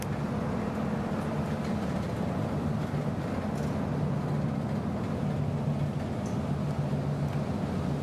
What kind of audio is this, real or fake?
real